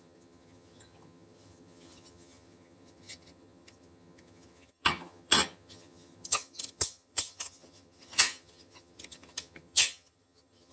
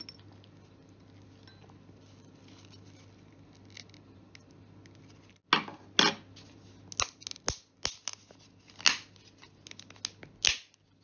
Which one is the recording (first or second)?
second